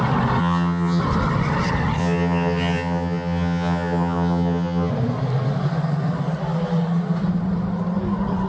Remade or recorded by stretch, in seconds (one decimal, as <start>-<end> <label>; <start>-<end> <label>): 0.0-0.4 recorded; 0.4-1.0 remade; 1.0-2.0 recorded; 2.0-4.9 remade; 4.9-8.5 recorded